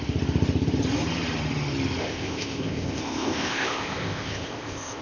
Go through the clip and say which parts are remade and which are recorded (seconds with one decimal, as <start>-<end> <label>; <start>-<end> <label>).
0.0-2.0 recorded; 2.0-5.0 remade